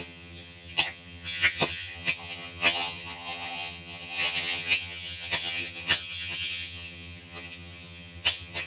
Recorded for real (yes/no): no